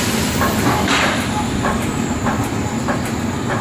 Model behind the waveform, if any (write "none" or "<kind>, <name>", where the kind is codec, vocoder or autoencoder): none